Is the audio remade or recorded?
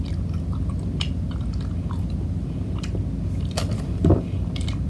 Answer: recorded